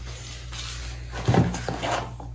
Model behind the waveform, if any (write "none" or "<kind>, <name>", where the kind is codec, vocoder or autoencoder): none